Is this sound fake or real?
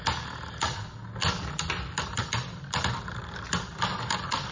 real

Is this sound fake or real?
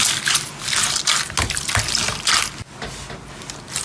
real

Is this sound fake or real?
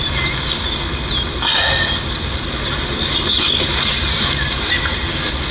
real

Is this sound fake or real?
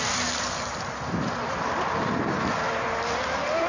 real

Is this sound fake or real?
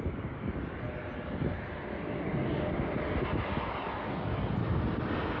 real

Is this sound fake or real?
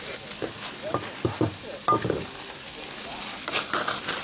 real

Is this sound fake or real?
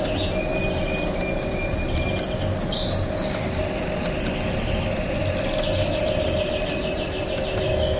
real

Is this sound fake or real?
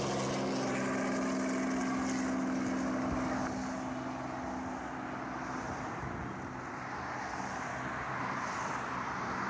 real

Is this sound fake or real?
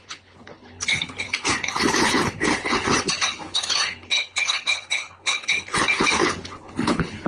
fake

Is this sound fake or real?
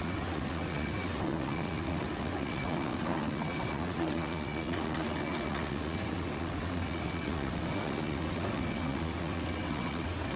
fake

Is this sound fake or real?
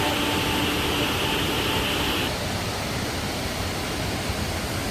real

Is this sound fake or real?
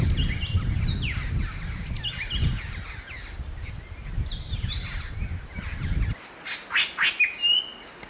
real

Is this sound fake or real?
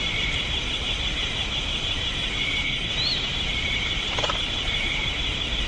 fake